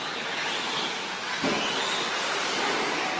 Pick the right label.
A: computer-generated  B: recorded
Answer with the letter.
B